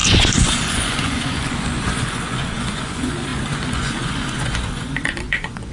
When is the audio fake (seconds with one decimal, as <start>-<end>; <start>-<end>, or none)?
0.0-5.7